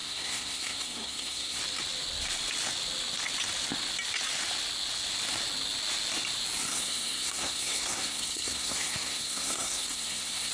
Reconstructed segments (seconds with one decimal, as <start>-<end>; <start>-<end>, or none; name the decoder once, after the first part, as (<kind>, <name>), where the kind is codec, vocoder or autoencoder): 0.0-1.6 (codec, SNAC); 6.7-10.5